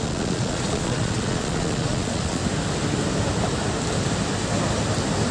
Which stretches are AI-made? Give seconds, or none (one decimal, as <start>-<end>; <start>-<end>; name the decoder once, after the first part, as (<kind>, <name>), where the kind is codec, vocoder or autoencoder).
0.0-2.4 (vocoder, Vocos)